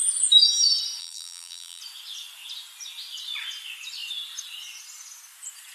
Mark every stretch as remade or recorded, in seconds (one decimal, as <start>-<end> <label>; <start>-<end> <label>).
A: 0.0-1.0 recorded; 1.0-1.8 remade; 1.8-5.7 recorded